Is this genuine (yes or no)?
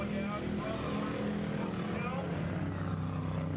yes